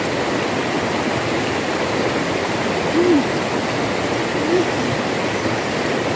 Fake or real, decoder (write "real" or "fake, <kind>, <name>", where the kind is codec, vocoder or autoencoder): real